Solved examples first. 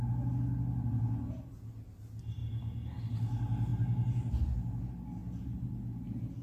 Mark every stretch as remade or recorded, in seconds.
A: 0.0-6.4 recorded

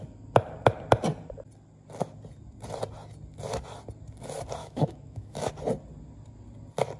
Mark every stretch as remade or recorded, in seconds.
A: 0.0-4.6 recorded; 4.6-5.5 remade; 5.5-7.0 recorded

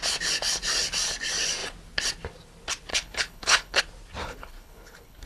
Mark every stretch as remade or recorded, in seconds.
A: 0.0-2.9 recorded; 2.9-3.8 remade; 3.8-4.2 recorded; 4.2-5.3 remade

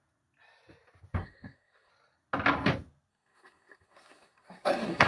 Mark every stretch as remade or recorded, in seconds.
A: 0.0-1.2 recorded; 1.2-1.9 remade; 1.9-3.1 recorded; 3.1-5.1 remade